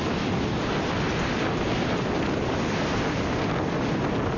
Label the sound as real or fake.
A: real